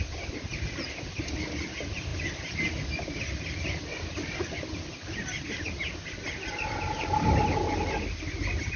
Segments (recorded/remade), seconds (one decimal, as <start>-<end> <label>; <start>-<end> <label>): 0.0-8.8 recorded